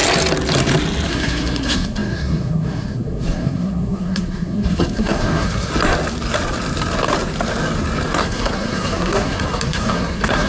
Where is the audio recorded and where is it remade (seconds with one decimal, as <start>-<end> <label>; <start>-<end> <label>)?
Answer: 0.0-1.1 recorded; 1.1-5.7 remade; 5.7-8.2 recorded; 8.2-10.5 remade

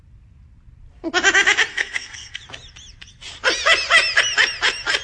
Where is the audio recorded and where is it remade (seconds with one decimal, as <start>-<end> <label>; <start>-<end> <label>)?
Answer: 0.0-1.7 recorded; 1.7-2.4 remade; 2.4-5.0 recorded

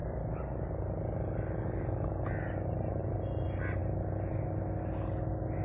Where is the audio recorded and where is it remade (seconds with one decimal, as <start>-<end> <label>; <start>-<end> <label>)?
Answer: 0.0-5.6 recorded

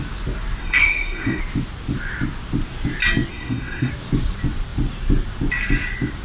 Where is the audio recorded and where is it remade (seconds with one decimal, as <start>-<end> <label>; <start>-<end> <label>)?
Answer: 0.0-0.6 recorded; 0.6-1.4 remade; 1.4-3.3 recorded; 3.3-3.9 remade; 3.9-6.2 recorded

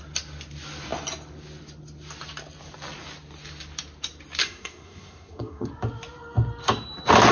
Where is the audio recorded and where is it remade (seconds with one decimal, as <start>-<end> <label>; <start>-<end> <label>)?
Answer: 0.0-4.4 recorded; 4.4-5.7 remade; 5.7-7.3 recorded

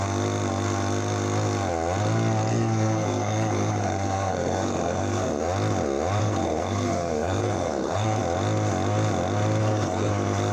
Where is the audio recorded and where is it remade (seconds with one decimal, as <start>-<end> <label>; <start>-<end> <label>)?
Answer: 0.0-2.5 recorded; 2.5-5.4 remade; 5.4-6.2 recorded; 6.2-8.2 remade; 8.2-9.6 recorded; 9.6-10.1 remade; 10.1-10.5 recorded

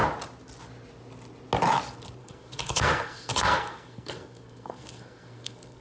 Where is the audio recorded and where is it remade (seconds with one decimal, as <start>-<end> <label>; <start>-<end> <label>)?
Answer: 0.0-2.2 recorded; 2.2-5.8 remade

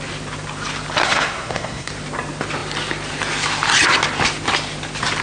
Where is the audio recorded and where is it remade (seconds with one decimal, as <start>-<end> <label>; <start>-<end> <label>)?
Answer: 0.0-1.0 recorded; 1.0-1.9 remade; 1.9-5.2 recorded